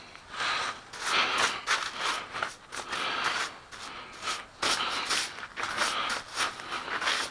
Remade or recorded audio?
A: recorded